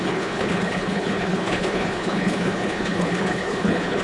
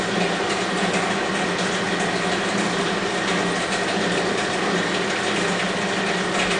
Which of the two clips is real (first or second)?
second